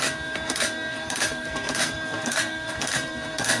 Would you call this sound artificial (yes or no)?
yes